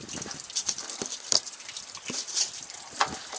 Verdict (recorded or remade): remade